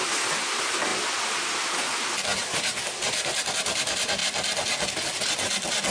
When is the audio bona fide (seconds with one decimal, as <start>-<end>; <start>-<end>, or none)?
0.0-5.9